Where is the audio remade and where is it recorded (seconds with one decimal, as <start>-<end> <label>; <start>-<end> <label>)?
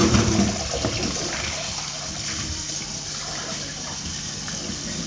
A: 0.0-3.1 remade; 3.1-5.1 recorded